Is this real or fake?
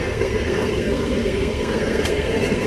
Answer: fake